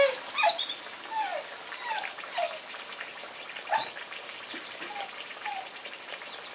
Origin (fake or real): real